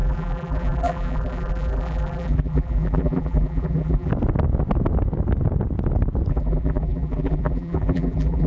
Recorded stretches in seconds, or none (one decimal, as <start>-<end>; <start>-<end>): 4.1-6.3

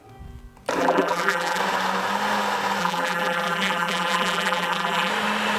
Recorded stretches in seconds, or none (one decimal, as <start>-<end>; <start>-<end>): 0.0-0.8; 1.6-2.8; 5.1-5.6

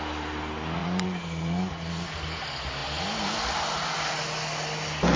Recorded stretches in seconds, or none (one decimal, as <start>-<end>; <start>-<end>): 0.0-0.8; 2.1-5.2

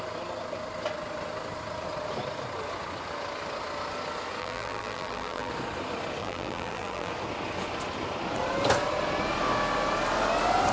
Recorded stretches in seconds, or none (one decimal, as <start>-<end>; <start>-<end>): 0.0-4.4; 5.5-6.2; 7.1-10.7

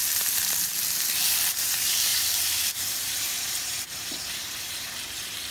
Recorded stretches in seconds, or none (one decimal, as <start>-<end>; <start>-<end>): none